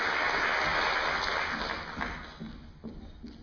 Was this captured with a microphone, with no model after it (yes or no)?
yes